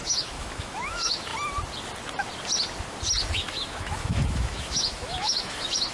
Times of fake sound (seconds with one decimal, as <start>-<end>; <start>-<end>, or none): 0.0-1.3; 3.3-5.9